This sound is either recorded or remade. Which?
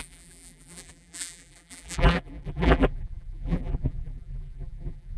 remade